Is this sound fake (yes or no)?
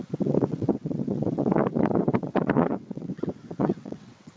yes